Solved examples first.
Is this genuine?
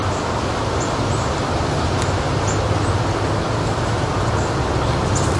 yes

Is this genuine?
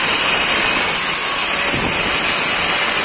yes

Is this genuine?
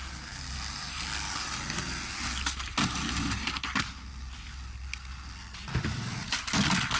yes